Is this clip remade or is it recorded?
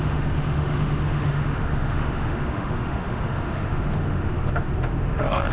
remade